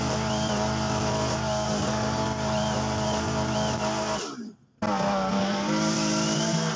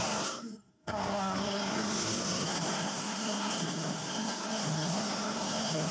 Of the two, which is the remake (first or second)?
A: second